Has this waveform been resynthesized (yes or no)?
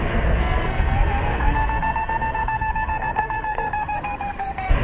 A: yes